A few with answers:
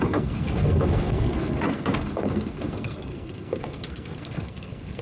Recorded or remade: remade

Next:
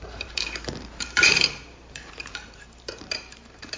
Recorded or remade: remade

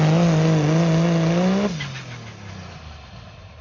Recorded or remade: recorded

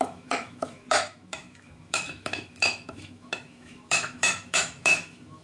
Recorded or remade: remade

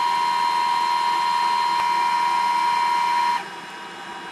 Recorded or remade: recorded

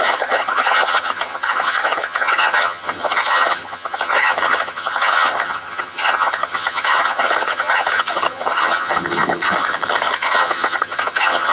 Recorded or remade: remade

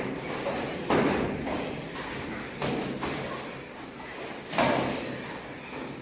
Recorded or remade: recorded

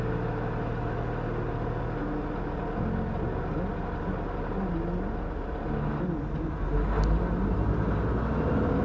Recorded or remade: recorded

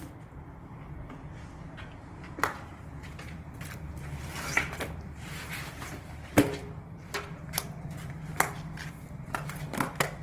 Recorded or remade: remade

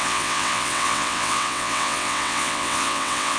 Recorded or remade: remade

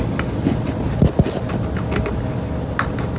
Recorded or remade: recorded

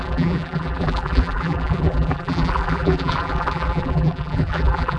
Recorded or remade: remade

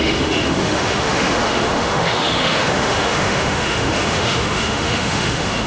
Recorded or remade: remade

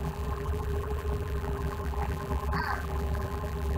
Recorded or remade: remade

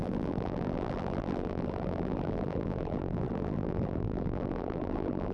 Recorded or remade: remade